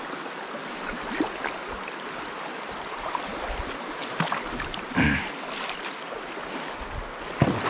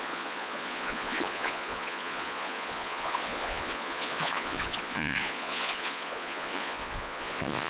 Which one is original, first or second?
first